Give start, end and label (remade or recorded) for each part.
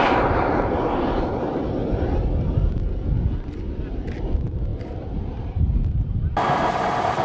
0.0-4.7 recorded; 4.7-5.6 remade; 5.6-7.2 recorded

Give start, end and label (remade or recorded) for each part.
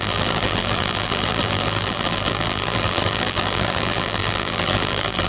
0.0-5.3 remade